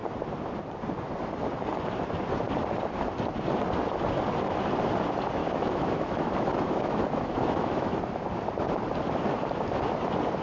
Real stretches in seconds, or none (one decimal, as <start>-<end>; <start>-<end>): 0.0-5.4; 8.0-10.4